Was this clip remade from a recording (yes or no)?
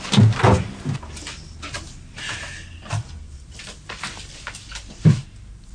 no